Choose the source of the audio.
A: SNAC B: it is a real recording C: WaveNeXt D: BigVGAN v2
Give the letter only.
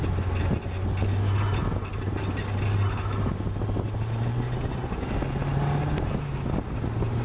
B